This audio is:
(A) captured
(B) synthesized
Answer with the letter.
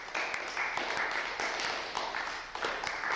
A